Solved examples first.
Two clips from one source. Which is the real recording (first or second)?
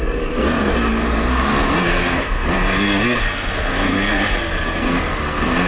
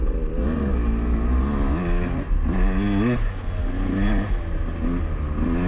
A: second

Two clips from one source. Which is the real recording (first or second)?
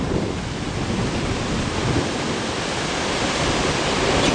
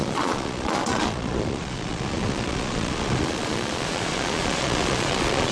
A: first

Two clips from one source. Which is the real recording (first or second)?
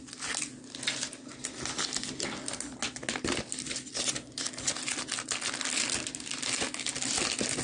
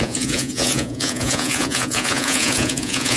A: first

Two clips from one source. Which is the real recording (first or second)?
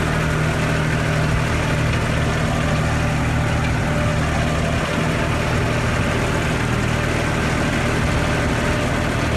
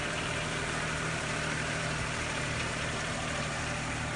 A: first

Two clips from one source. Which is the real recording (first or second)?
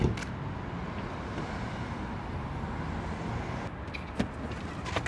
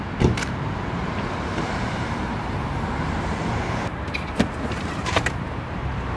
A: first